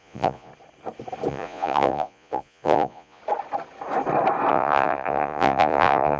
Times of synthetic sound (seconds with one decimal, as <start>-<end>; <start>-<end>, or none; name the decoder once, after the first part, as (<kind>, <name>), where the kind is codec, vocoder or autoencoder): 0.0-0.5 (vocoder, Vocos); 1.3-3.2; 4.5-6.2